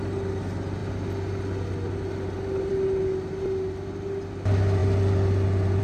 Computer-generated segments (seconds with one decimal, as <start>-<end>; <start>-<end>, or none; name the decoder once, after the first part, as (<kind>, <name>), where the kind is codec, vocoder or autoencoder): none